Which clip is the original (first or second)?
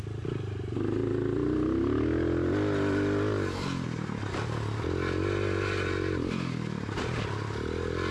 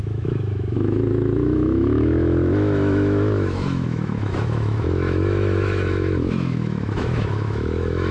first